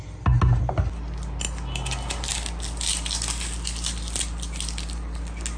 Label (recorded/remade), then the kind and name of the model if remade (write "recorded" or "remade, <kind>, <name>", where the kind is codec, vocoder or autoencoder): recorded